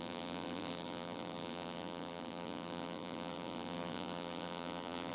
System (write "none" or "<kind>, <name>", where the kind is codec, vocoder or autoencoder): vocoder, BigVGAN v2